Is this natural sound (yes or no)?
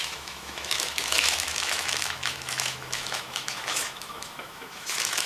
no